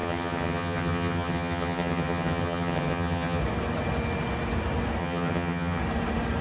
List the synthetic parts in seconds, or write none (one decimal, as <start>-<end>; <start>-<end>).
0.0-3.4; 5.0-5.8